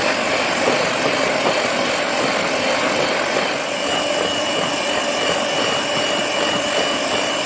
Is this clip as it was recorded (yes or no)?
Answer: yes